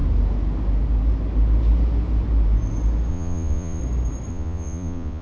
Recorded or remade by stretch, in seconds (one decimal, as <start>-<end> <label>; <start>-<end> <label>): 0.0-3.1 recorded; 3.1-3.8 remade; 3.8-4.3 recorded; 4.3-5.2 remade